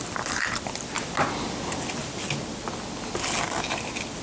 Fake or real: real